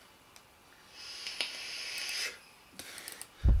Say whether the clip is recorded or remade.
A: recorded